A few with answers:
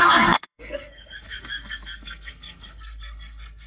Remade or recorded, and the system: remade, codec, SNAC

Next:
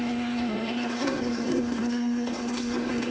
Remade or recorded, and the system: remade, codec, SNAC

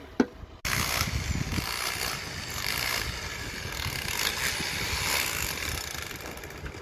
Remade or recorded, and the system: recorded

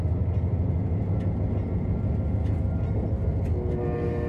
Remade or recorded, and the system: recorded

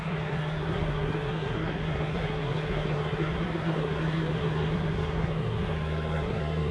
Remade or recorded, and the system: remade, codec, SNAC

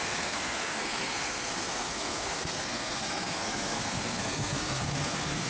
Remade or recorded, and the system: remade, codec, SNAC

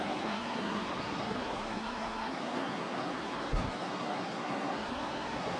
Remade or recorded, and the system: remade, codec, SNAC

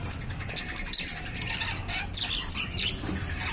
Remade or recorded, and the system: recorded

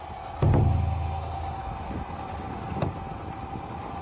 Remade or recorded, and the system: recorded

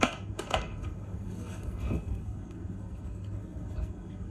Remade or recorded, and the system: remade, codec, SNAC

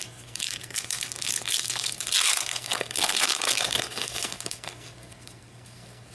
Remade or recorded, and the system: remade, codec, SNAC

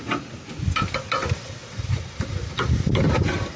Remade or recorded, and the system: recorded